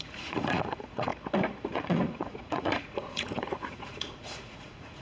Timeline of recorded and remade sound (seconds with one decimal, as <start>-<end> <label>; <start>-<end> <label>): 0.0-1.1 remade; 1.1-1.6 recorded; 1.6-5.0 remade